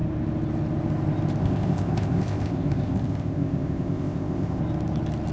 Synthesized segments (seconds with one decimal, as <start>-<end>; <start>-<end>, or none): 1.4-4.6